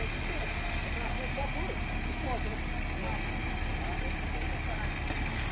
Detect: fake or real real